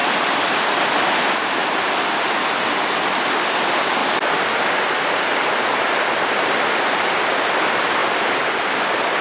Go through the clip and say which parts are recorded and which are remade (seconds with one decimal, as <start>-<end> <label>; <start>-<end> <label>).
0.0-1.1 remade; 1.1-4.0 recorded; 4.0-7.1 remade; 7.1-8.0 recorded; 8.0-8.6 remade; 8.6-9.2 recorded